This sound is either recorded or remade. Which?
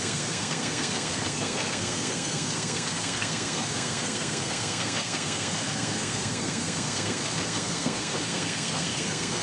remade